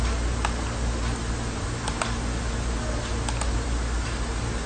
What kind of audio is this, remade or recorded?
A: recorded